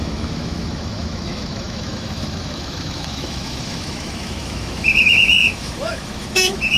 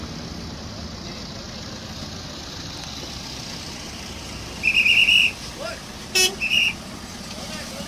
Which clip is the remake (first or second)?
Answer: first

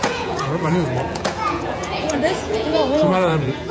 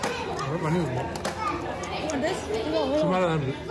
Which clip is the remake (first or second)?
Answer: first